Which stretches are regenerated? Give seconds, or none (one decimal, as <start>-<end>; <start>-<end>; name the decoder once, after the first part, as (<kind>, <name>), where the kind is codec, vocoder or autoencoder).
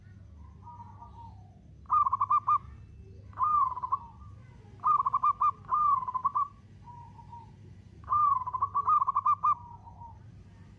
6.2-8.6 (vocoder, BigVGAN v2)